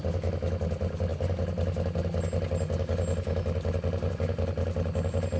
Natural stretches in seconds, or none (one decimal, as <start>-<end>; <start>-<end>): 0.0-5.4